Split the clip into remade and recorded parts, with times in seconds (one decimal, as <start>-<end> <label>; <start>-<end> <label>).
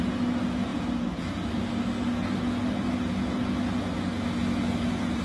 0.0-5.2 recorded